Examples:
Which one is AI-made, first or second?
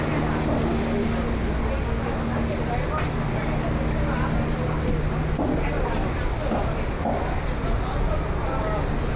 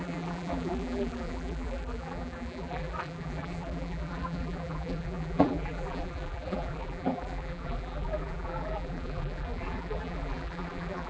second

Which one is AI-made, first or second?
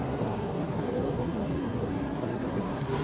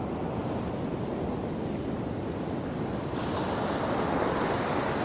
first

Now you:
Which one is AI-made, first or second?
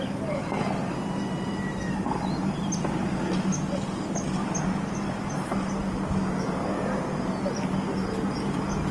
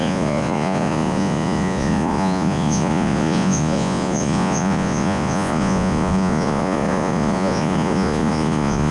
second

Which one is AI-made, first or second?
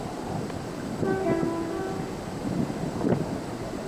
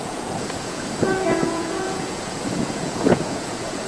second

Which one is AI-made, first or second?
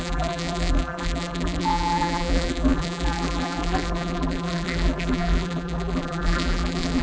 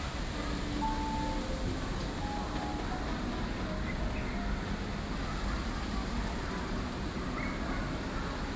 first